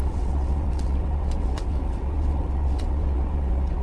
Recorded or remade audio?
remade